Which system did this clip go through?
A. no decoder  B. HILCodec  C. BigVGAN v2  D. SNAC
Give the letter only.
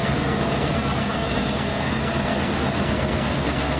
D